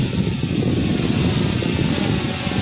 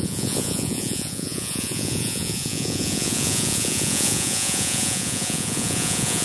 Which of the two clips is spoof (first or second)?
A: second